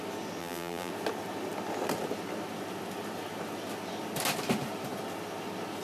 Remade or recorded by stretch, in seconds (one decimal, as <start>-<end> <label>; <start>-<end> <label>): 0.0-0.4 recorded; 0.4-0.9 remade; 0.9-5.8 recorded